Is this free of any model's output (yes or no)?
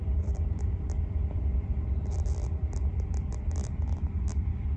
no